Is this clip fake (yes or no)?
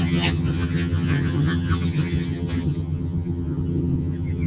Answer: yes